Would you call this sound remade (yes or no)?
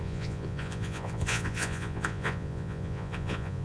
yes